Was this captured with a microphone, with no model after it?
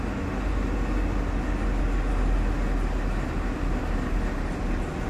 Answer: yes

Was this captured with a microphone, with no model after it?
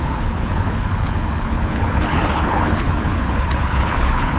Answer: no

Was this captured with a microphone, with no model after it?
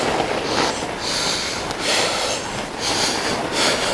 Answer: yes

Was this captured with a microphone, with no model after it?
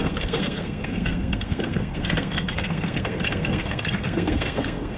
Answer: no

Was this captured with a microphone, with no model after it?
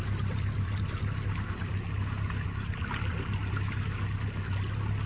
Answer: yes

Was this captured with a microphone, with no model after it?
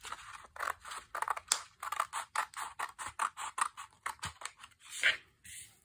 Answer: yes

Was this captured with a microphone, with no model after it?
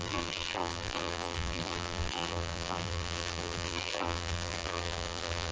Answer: no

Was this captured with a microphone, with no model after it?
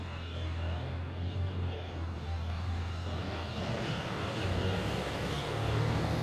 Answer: no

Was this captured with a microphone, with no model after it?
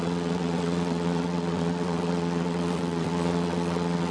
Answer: no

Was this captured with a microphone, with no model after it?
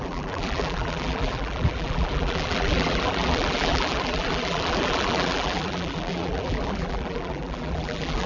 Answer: no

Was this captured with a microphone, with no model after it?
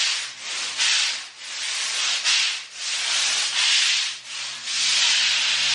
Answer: yes